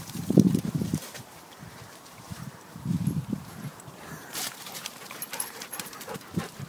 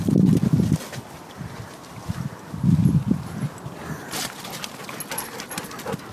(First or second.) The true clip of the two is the second